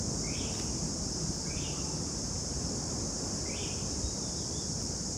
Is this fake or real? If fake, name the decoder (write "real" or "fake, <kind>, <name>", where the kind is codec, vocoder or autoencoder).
real